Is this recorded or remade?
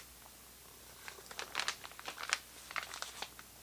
recorded